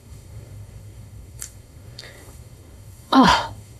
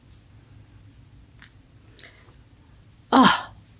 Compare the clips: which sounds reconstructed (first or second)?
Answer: first